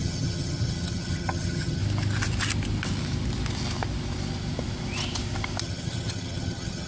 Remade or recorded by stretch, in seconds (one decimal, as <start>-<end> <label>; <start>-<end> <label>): 0.0-1.8 remade; 1.8-5.6 recorded; 5.6-6.9 remade